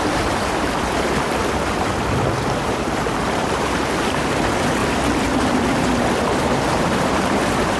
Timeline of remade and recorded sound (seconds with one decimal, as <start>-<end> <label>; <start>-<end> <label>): 0.0-1.4 remade; 1.4-2.6 recorded; 2.6-4.8 remade; 4.8-5.4 recorded; 5.4-5.9 remade; 5.9-6.4 recorded; 6.4-7.8 remade